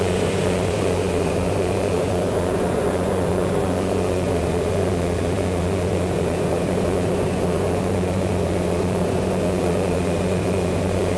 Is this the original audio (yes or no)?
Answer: no